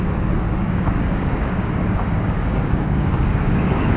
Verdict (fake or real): fake